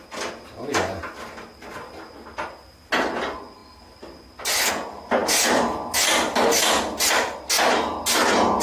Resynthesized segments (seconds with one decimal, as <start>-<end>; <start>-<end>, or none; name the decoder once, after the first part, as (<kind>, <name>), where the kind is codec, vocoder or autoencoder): none